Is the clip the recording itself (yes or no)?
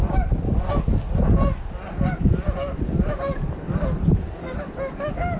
yes